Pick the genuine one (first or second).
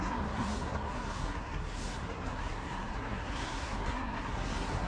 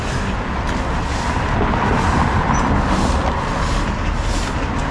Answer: second